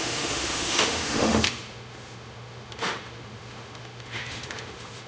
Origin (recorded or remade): remade